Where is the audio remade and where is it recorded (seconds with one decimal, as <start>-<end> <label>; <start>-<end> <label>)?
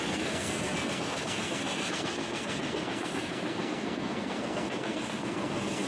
0.0-5.9 remade